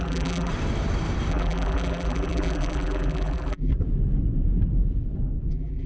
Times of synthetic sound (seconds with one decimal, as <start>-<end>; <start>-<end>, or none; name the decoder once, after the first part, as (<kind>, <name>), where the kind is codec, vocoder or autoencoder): 0.0-0.5 (vocoder, BigVGAN v2); 1.3-3.7; 5.5-5.9